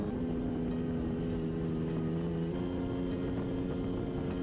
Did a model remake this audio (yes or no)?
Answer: no